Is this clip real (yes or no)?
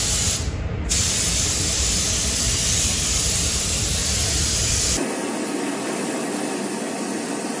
yes